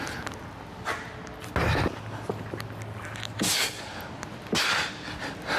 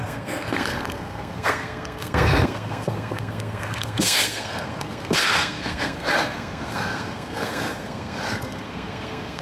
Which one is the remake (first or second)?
second